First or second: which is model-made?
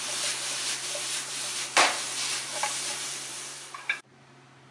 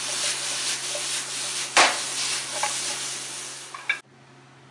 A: first